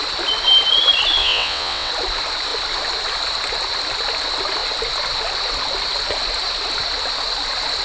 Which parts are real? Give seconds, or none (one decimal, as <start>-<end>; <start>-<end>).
0.0-1.2; 1.9-7.8